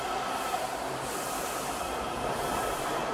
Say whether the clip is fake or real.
real